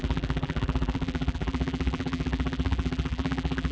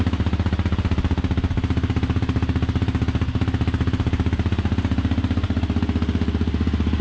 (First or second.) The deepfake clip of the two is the first